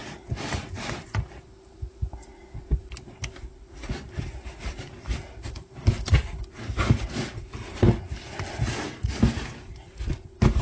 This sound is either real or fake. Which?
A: real